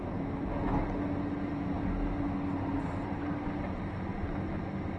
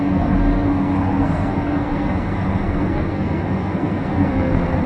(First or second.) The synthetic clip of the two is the second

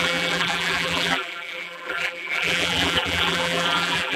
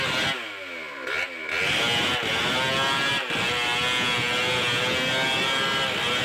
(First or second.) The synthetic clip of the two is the first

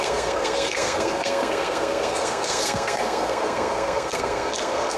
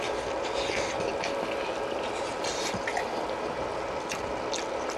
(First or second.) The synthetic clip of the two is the first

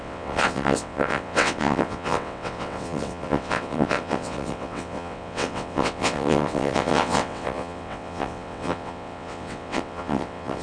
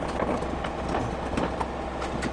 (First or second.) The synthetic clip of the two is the first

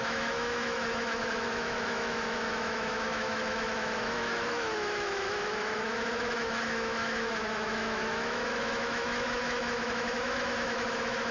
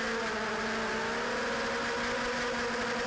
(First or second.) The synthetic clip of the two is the first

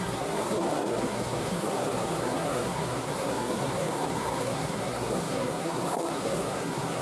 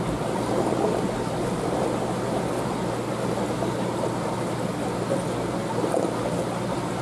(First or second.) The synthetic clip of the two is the first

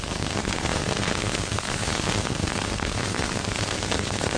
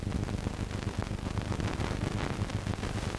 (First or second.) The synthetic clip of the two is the first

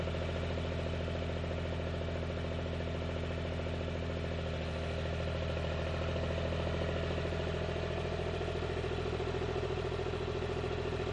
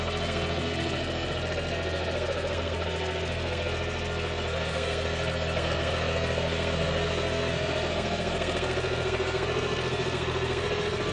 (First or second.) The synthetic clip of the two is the second